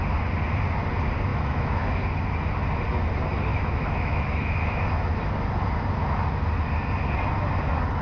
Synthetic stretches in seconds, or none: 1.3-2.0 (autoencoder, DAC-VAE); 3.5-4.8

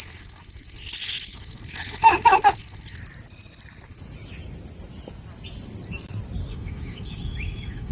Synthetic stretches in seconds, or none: 0.0-3.0 (autoencoder, DAC-VAE); 6.5-7.9

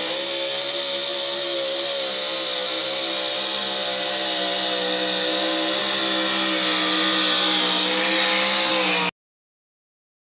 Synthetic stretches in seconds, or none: none

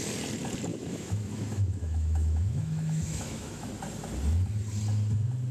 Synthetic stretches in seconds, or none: 0.7-3.7 (autoencoder, DAC-VAE)